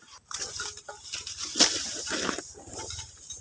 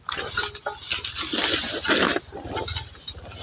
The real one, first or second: second